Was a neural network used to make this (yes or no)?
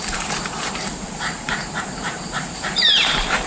yes